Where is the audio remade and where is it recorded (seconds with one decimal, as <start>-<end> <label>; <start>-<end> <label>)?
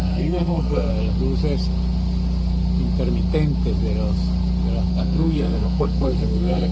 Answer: 0.0-0.9 remade; 0.9-4.9 recorded; 4.9-6.7 remade